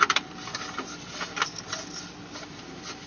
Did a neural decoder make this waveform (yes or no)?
no